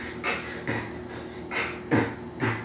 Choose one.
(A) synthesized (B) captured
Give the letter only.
B